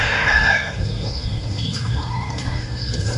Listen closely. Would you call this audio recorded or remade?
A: remade